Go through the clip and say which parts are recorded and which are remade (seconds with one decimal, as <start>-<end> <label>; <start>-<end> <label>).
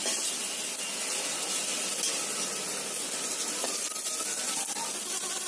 0.0-5.5 recorded